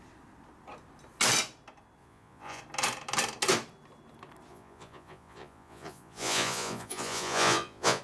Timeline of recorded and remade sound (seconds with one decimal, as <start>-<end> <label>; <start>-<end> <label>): 0.0-2.0 recorded; 2.0-2.6 remade; 2.6-4.5 recorded; 4.5-8.0 remade

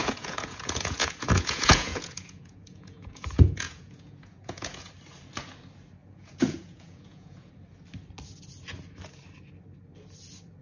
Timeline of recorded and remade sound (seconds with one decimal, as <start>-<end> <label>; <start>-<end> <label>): 0.0-4.9 remade; 4.9-6.0 recorded; 6.0-7.5 remade; 7.5-10.6 recorded

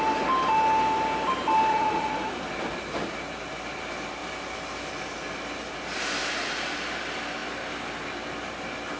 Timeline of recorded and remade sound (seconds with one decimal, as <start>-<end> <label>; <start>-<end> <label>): 0.0-1.7 recorded; 1.7-2.3 remade; 2.3-9.0 recorded

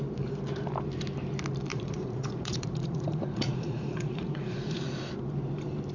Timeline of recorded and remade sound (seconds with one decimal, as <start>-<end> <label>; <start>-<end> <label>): 0.0-1.7 recorded; 1.7-4.8 remade; 4.8-5.9 recorded

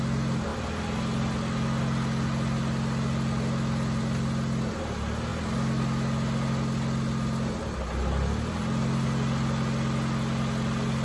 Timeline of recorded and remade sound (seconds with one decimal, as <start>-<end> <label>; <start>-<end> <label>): 0.0-11.0 recorded

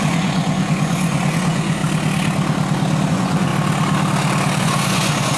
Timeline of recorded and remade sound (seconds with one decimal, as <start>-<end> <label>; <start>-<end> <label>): 0.0-1.8 remade; 1.8-3.1 recorded; 3.1-3.5 remade; 3.5-4.6 recorded; 4.6-5.4 remade

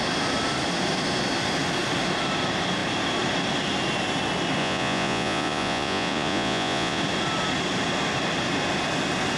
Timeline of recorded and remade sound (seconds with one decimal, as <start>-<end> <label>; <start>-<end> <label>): 0.0-4.6 recorded; 4.6-7.0 remade; 7.0-9.4 recorded